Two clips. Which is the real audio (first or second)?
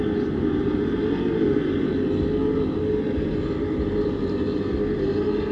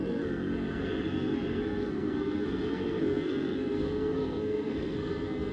first